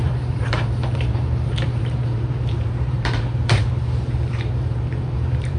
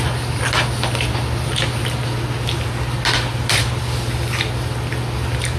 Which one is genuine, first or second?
second